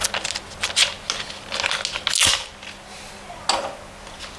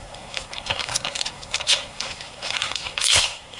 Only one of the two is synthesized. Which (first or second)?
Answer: second